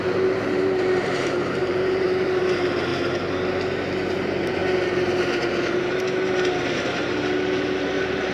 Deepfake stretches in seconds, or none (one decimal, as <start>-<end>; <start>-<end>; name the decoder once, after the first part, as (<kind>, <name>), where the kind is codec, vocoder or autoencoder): 0.0-2.9 (vocoder, BigVGAN v2); 4.1-4.6; 6.7-8.3

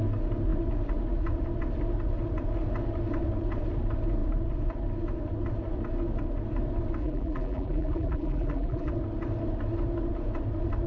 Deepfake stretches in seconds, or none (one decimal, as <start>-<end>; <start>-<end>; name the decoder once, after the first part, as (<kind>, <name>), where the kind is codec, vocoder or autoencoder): 7.0-8.9 (vocoder, BigVGAN v2)

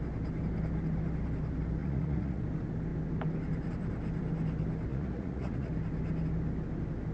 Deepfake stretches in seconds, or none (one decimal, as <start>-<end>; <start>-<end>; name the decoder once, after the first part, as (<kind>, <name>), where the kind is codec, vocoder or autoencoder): 1.8-2.4 (vocoder, Vocos); 4.9-5.7

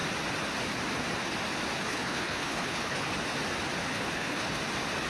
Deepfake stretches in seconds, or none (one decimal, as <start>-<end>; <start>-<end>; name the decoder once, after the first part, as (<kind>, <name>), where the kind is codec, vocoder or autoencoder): 1.9-3.1 (codec, HILCodec); 3.8-4.6

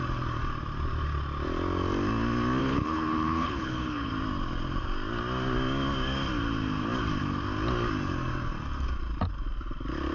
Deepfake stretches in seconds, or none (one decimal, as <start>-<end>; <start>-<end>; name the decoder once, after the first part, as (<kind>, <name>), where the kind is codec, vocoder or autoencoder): 2.6-4.1 (codec, HILCodec)

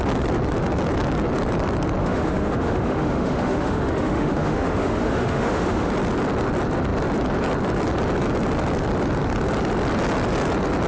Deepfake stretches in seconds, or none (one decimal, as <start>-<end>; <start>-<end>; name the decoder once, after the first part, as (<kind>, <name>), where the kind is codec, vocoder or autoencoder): 2.0-5.9 (autoencoder, DAC-VAE)

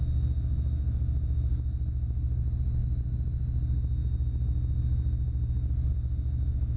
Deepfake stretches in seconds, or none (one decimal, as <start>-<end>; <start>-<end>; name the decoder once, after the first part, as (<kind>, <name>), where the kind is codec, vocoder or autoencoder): none

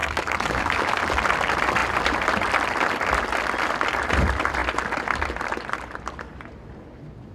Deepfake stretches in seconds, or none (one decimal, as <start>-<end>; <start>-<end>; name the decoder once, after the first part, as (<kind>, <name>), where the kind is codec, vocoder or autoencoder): 0.0-1.0 (codec, DAC)